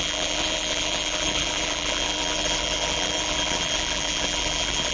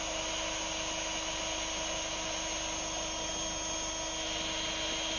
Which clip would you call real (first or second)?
second